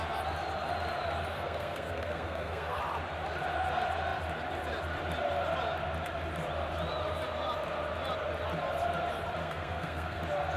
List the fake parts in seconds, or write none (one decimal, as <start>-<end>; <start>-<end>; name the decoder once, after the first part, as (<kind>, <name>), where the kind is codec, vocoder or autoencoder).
1.3-2.8 (codec, SNAC); 9.4-10.2